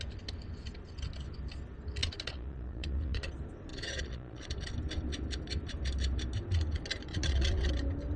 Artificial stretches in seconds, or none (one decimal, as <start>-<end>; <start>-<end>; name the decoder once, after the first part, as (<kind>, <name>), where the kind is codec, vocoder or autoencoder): 2.0-3.3 (vocoder, Vocos); 3.7-4.5; 7.1-7.7